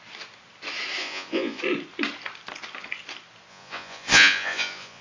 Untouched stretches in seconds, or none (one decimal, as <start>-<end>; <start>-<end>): 0.0-1.0; 1.6-3.5